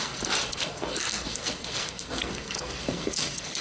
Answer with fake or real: fake